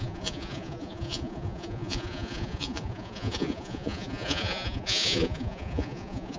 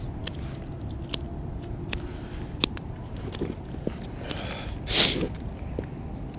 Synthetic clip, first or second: first